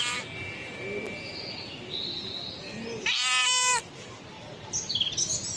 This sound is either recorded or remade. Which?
recorded